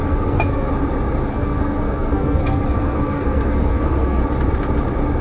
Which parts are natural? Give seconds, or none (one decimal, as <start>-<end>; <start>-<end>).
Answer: 0.7-1.3; 4.2-5.2